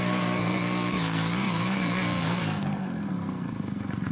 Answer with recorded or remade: remade